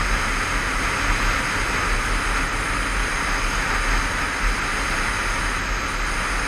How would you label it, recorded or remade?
recorded